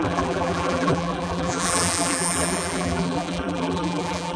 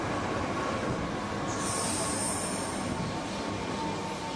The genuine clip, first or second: second